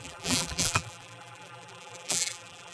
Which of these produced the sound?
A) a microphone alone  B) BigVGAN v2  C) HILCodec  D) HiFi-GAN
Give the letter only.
B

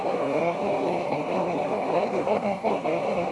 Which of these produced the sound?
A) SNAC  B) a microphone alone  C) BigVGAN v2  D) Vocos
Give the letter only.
A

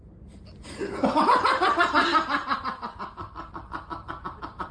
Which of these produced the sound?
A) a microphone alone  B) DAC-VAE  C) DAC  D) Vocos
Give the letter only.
A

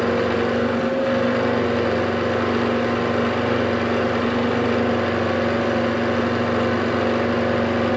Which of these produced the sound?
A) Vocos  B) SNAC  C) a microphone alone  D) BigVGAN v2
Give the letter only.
C